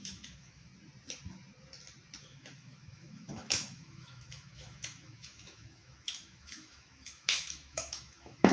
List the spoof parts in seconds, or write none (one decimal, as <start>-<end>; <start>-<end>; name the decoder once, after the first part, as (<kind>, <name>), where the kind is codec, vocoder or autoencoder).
0.0-0.7 (autoencoder, DAC-VAE); 2.2-8.5